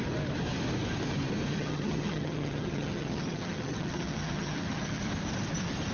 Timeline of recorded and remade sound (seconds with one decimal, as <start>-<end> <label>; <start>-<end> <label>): 0.0-1.5 recorded; 1.5-5.0 remade; 5.0-5.9 recorded